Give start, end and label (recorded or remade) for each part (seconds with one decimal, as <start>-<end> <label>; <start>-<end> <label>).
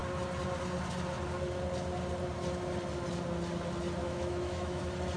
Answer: 0.0-4.0 recorded; 4.0-4.8 remade; 4.8-5.2 recorded